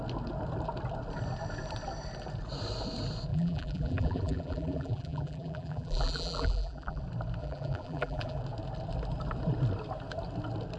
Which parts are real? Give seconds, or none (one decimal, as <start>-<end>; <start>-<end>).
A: 0.0-3.3; 7.0-7.4; 8.4-10.8